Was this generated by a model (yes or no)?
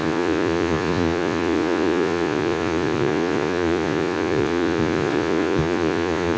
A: yes